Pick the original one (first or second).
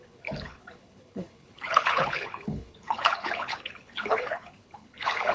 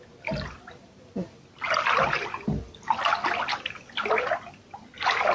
second